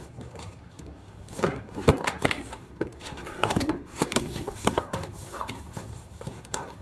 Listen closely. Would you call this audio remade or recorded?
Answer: remade